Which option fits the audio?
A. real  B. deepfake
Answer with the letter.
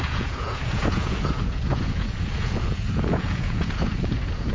B